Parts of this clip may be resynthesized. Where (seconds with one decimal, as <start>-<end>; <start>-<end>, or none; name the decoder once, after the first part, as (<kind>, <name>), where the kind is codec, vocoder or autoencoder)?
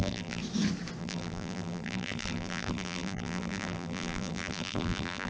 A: 0.0-0.4 (vocoder, BigVGAN v2); 1.0-5.3